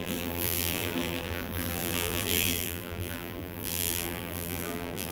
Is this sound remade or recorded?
remade